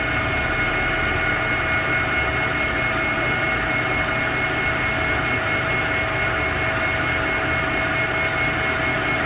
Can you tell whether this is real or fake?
real